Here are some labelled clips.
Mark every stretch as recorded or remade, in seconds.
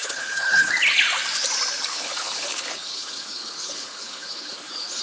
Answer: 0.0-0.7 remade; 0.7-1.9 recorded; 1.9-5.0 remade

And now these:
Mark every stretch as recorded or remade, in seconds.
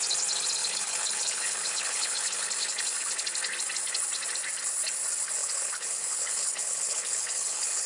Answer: 0.0-0.6 recorded; 0.6-2.2 remade; 2.2-5.4 recorded; 5.4-7.9 remade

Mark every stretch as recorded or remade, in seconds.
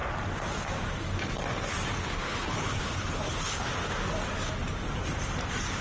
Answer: 0.0-2.0 recorded; 2.0-3.7 remade; 3.7-5.8 recorded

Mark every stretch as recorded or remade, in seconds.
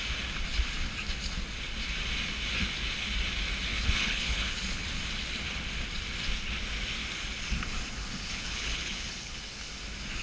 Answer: 0.0-3.7 recorded; 3.7-4.9 remade; 4.9-8.0 recorded; 8.0-9.4 remade; 9.4-10.2 recorded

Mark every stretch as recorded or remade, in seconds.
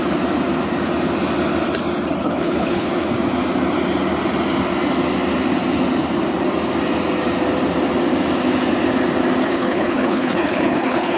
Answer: 0.0-2.2 recorded; 2.2-2.9 remade; 2.9-9.4 recorded; 9.4-11.2 remade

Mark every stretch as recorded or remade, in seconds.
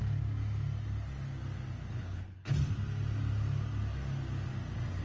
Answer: 0.0-1.9 recorded; 1.9-2.5 remade; 2.5-5.0 recorded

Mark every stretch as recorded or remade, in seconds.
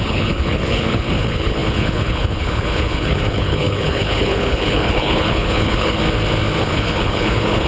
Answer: 0.0-6.0 remade; 6.0-6.6 recorded; 6.6-7.7 remade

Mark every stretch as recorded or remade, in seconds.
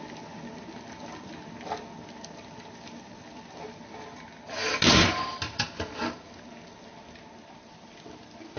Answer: 0.0-8.6 recorded